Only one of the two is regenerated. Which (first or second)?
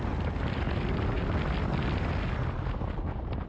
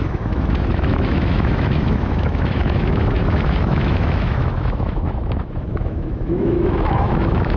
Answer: second